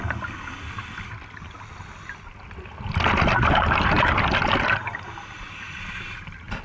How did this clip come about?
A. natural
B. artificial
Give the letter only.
A